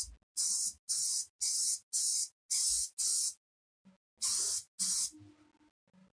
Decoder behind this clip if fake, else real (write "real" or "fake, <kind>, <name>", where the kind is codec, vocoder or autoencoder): real